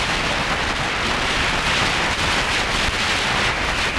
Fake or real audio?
real